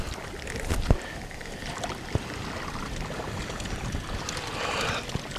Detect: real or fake real